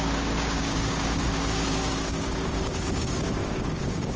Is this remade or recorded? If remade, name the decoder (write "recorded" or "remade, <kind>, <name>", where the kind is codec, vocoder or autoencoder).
remade, codec, DAC